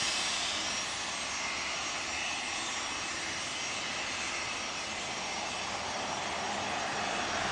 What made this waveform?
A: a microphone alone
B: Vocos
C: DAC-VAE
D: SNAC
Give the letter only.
A